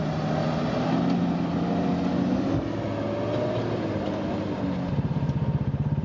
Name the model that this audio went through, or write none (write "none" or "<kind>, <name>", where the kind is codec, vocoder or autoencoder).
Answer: none